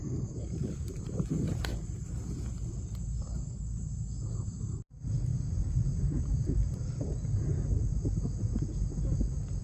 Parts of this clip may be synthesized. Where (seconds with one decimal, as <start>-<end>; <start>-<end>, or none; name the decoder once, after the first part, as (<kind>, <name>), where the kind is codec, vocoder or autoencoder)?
5.3-7.3 (vocoder, BigVGAN v2)